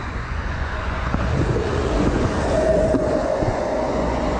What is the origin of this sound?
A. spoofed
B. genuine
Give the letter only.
A